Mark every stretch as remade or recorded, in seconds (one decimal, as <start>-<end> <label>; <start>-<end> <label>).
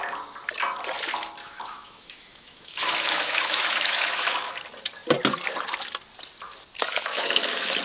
0.0-1.4 recorded; 1.4-4.6 remade; 4.6-6.9 recorded; 6.9-7.8 remade